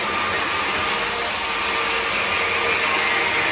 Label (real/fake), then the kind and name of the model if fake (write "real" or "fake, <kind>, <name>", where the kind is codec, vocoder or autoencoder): real